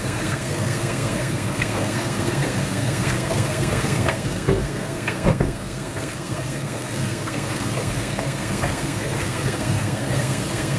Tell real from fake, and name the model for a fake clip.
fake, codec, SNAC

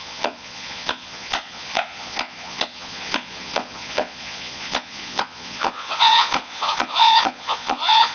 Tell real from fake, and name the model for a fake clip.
fake, vocoder, Vocos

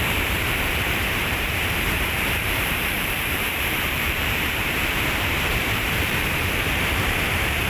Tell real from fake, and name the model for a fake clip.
fake, vocoder, BigVGAN v2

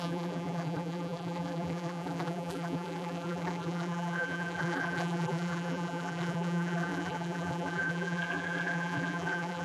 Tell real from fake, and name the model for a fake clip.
fake, vocoder, BigVGAN v2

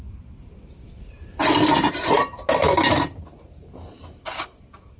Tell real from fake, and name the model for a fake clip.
real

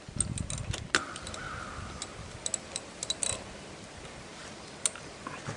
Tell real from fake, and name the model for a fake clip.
real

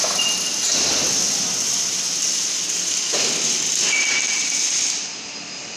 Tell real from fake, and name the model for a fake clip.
real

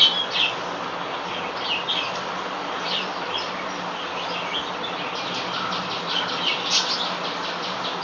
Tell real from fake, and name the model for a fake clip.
real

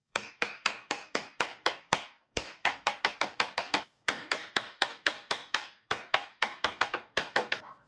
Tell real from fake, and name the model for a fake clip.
fake, codec, DAC